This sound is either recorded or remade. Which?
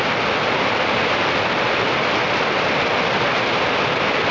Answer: recorded